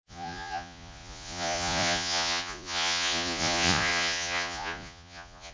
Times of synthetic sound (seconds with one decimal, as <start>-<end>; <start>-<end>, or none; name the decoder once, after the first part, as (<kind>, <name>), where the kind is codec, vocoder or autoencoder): 0.0-5.5 (vocoder, Vocos)